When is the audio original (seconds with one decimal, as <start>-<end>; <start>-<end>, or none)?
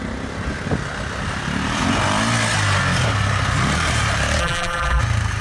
0.0-4.4; 5.0-5.4